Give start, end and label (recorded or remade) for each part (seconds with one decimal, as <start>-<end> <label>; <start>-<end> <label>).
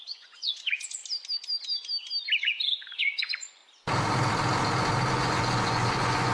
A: 0.0-1.0 remade; 1.0-2.4 recorded; 2.4-3.6 remade; 3.6-5.1 recorded; 5.1-6.3 remade